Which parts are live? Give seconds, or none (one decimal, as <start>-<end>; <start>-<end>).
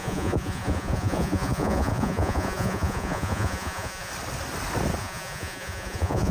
4.1-5.0